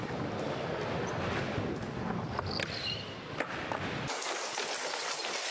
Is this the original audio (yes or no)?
yes